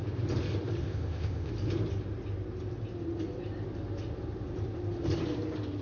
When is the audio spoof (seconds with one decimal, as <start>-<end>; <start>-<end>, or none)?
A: 0.8-1.5